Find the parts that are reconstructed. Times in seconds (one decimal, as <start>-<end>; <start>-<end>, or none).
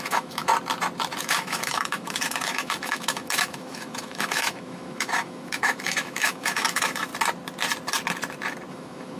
0.0-0.5; 1.2-7.1; 8.7-9.2